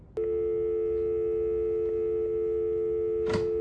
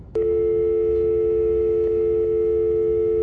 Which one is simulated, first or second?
second